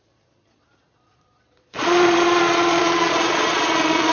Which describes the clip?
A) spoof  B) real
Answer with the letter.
A